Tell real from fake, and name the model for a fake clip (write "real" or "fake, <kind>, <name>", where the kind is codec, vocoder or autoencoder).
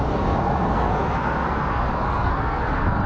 fake, codec, SNAC